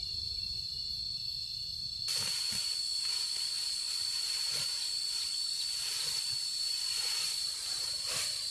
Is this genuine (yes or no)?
no